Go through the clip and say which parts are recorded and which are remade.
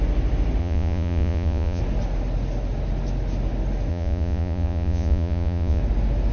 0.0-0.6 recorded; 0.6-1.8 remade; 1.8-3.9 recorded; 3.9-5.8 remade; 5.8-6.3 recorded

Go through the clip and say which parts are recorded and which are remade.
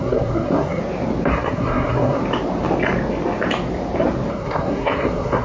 0.0-0.8 remade; 0.8-1.3 recorded; 1.3-2.2 remade; 2.2-4.3 recorded; 4.3-5.4 remade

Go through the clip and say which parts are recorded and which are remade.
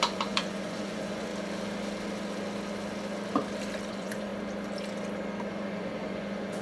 0.0-1.3 remade; 1.3-3.9 recorded; 3.9-4.3 remade; 4.3-5.5 recorded; 5.5-6.6 remade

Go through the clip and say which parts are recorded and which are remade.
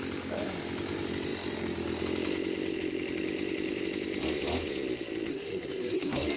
0.0-5.3 recorded; 5.3-6.4 remade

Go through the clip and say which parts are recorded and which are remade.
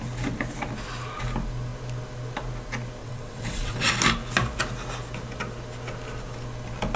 0.0-3.0 recorded; 3.0-3.9 remade; 3.9-7.0 recorded